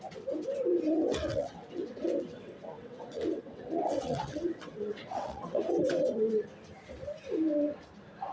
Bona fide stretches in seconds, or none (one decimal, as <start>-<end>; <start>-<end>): 0.0-0.7; 5.7-8.3